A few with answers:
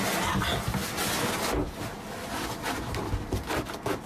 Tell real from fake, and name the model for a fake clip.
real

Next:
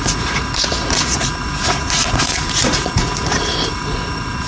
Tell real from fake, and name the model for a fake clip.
fake, vocoder, Vocos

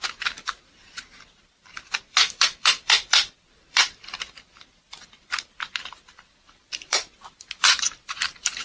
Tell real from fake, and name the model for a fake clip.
fake, vocoder, BigVGAN v2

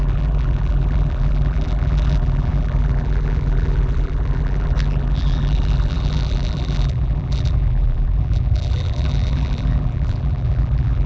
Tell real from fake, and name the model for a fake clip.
fake, vocoder, BigVGAN v2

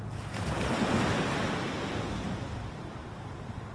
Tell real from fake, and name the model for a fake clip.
real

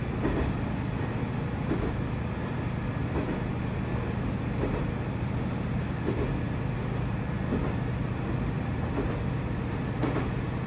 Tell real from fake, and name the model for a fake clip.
real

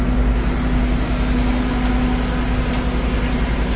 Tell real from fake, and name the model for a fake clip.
real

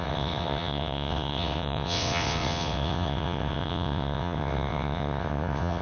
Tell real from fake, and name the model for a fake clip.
fake, vocoder, WaveNeXt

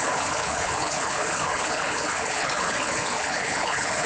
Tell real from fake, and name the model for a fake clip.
fake, codec, HILCodec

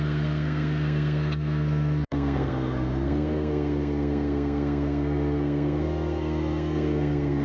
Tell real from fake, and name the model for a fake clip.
fake, codec, SNAC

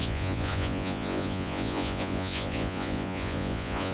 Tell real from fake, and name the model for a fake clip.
fake, vocoder, Vocos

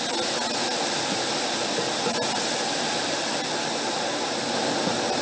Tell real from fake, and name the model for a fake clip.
real